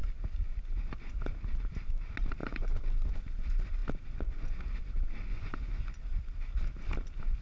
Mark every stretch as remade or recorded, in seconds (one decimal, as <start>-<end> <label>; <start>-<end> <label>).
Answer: 0.0-2.4 recorded; 2.4-3.2 remade; 3.2-5.3 recorded; 5.3-5.8 remade; 5.8-7.4 recorded